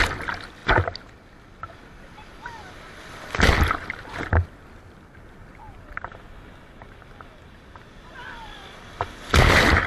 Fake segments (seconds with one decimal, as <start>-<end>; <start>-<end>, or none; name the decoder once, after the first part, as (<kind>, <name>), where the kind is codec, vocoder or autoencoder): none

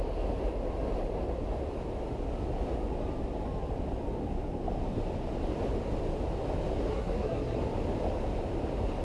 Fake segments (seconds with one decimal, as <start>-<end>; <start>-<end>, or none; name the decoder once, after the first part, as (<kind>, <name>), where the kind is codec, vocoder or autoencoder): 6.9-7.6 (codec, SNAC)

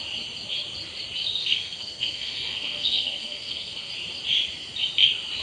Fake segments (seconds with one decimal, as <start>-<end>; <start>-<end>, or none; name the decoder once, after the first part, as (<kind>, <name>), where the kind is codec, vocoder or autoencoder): 1.4-3.9 (codec, SNAC)

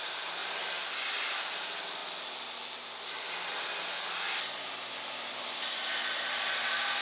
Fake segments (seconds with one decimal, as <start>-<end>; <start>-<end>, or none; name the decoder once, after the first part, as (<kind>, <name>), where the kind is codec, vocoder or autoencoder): none